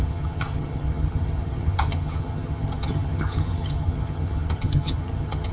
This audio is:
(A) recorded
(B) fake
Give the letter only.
B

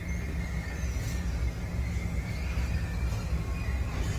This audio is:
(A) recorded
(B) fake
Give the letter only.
A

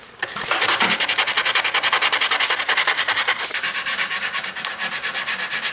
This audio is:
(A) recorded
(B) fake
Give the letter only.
A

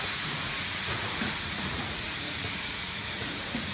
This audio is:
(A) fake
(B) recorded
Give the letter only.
A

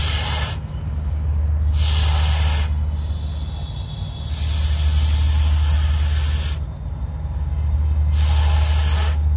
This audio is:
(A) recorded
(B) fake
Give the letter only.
A